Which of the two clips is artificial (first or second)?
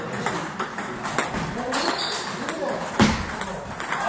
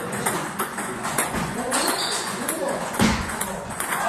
second